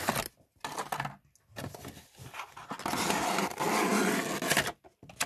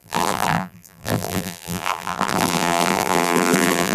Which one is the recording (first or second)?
first